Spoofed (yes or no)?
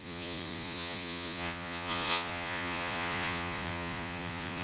yes